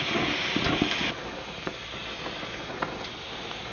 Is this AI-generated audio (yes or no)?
no